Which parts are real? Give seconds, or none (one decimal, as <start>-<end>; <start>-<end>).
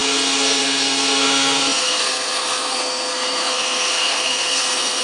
none